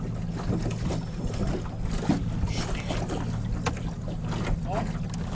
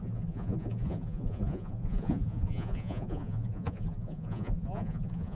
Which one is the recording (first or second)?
first